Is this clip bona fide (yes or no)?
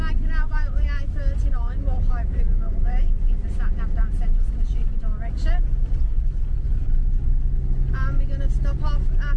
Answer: yes